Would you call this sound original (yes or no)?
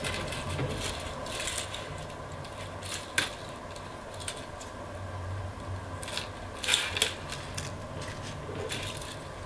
yes